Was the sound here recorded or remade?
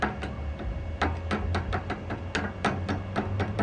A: recorded